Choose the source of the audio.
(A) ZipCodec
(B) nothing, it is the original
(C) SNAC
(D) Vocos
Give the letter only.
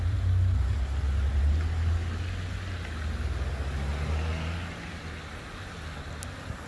B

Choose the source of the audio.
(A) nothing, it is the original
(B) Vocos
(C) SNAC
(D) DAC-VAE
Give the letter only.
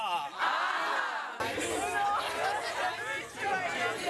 A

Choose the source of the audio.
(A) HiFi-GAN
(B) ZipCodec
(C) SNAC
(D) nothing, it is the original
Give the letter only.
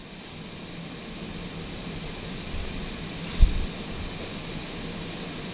D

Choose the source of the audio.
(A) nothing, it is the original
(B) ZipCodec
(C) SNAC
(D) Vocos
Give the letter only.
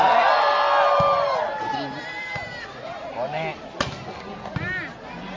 A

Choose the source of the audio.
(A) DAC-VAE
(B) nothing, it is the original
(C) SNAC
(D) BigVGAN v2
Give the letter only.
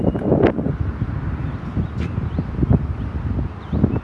B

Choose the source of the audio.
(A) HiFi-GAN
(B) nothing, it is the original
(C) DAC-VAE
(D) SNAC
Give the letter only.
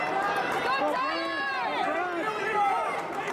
B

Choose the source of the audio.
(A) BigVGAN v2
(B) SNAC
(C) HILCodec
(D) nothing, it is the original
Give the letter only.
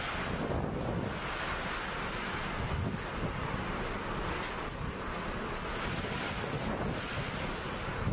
D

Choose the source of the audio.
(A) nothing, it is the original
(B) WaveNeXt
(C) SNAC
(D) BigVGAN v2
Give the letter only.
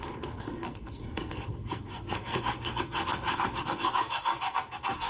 C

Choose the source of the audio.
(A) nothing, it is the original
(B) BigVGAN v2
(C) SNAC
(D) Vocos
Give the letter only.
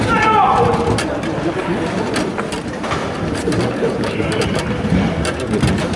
A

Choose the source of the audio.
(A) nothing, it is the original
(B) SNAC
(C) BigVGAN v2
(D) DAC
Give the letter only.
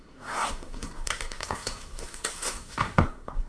B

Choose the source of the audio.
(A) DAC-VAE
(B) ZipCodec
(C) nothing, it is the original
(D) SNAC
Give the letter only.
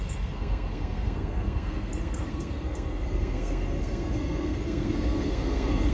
D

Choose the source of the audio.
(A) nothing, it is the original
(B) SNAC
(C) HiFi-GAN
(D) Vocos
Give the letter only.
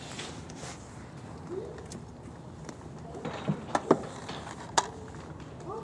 A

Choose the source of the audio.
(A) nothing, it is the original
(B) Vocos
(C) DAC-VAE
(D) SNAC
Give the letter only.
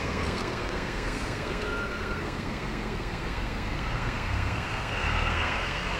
D